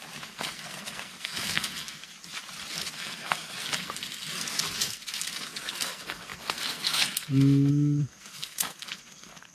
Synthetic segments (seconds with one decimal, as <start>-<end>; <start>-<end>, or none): 0.0-2.1; 2.7-9.5